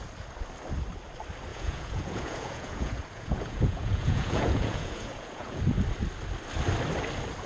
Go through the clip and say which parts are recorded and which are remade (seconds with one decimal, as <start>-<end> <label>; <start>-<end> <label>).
0.0-1.5 recorded; 1.5-5.6 remade; 5.6-7.5 recorded